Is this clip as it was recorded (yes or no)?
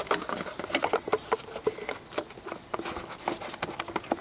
yes